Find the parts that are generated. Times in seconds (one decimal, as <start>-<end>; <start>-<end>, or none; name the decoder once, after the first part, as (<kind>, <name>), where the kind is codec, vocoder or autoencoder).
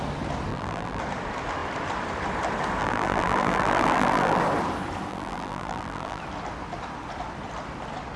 0.5-1.0 (vocoder, BigVGAN v2); 2.8-4.4; 5.1-6.2